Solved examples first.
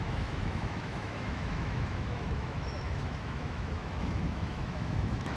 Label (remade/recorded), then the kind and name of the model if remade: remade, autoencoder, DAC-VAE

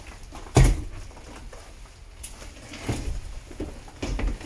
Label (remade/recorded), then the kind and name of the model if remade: recorded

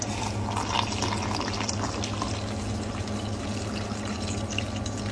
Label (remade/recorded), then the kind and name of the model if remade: recorded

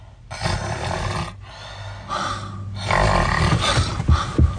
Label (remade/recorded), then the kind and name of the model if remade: recorded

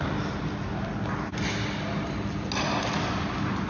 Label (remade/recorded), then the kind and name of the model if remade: recorded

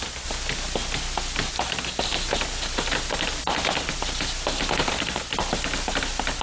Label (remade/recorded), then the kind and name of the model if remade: recorded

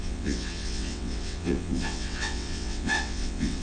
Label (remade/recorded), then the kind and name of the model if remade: remade, vocoder, WaveNeXt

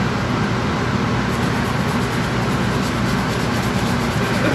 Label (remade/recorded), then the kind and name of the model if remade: recorded